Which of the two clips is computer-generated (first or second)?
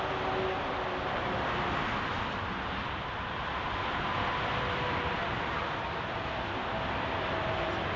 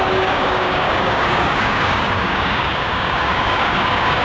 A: second